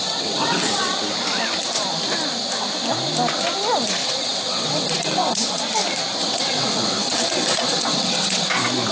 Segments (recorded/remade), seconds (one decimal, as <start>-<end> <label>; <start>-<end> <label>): 0.0-1.0 remade; 1.0-4.0 recorded; 4.0-5.6 remade; 5.6-6.2 recorded; 6.2-8.5 remade; 8.5-8.9 recorded